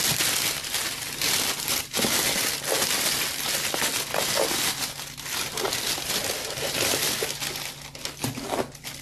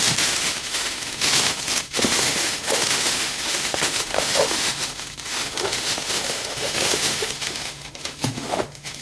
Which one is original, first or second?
first